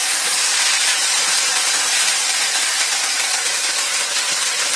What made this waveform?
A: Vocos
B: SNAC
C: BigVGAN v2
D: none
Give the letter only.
D